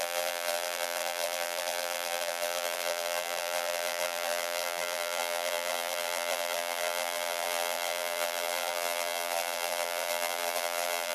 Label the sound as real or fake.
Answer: fake